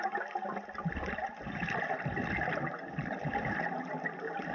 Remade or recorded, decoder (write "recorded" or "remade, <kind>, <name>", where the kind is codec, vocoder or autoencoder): recorded